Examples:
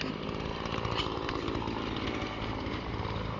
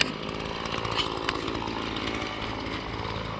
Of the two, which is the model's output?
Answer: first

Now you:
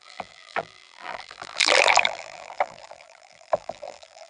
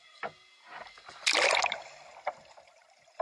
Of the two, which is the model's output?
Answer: first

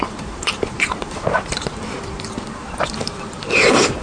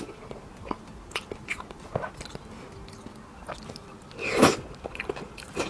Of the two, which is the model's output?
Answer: first